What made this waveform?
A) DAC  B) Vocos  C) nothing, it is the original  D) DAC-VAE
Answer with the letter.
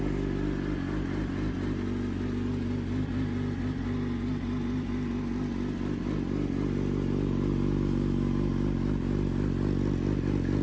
C